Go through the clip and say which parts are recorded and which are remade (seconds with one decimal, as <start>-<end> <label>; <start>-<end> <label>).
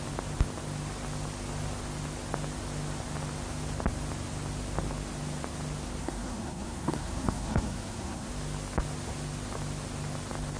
0.0-6.0 recorded; 6.0-8.3 remade; 8.3-10.6 recorded